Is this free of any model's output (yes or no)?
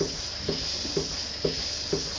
yes